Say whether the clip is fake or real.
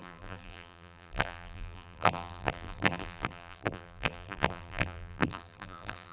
fake